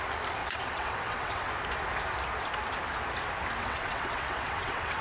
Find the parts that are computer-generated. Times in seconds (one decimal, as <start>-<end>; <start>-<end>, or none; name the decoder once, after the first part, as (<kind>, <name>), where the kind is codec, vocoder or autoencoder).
0.4-1.5 (vocoder, WaveNeXt); 3.6-5.0